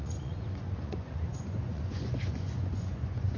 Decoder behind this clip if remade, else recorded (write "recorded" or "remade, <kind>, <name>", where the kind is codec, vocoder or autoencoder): remade, vocoder, Vocos